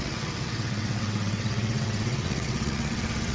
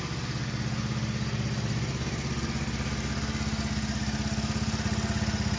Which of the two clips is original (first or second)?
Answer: second